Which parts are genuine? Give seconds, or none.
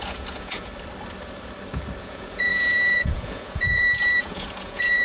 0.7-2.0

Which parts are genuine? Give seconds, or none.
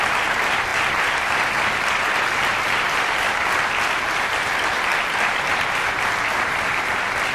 none